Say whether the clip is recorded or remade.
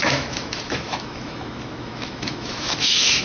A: remade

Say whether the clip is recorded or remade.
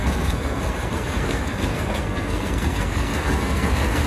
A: remade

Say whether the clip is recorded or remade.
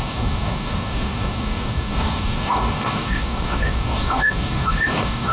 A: remade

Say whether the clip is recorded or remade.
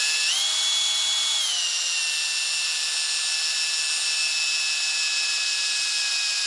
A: recorded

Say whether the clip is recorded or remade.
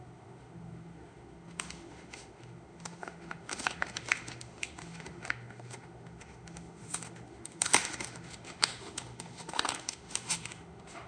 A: remade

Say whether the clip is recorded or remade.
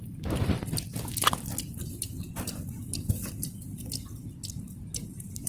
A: recorded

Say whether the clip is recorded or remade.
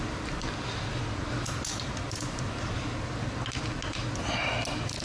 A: recorded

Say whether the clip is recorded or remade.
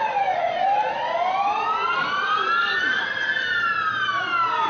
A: recorded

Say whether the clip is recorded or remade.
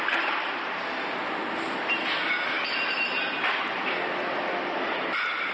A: recorded